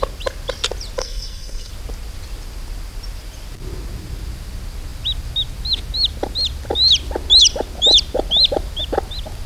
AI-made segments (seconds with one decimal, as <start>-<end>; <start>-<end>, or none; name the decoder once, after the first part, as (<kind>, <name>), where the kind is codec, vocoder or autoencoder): 1.0-1.7 (codec, SNAC)